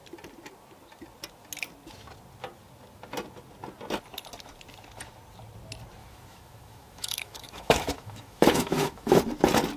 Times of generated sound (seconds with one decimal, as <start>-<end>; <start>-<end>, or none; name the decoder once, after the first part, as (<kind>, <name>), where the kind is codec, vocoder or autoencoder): 6.0-9.2 (autoencoder, DAC-VAE)

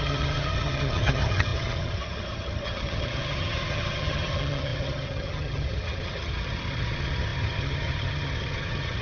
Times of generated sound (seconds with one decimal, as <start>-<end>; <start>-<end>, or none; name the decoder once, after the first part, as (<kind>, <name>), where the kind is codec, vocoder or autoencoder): 0.0-9.0 (vocoder, HiFi-GAN)

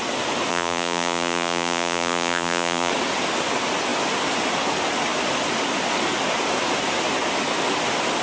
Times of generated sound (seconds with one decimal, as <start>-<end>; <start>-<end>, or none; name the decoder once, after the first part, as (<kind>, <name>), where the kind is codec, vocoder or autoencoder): 0.5-2.9 (vocoder, BigVGAN v2)

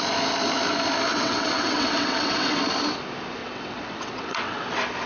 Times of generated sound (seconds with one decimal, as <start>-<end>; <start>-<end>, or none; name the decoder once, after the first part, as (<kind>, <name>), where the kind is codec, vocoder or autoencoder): 1.1-2.6 (vocoder, WaveNeXt); 3.4-4.6

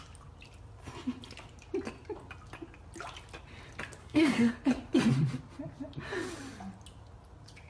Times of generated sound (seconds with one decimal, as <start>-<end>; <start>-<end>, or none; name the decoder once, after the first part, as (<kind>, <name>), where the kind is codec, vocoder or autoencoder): 4.0-4.5 (codec, SNAC)